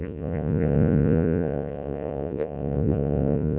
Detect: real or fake fake